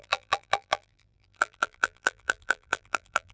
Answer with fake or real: fake